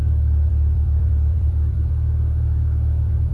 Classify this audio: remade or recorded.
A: remade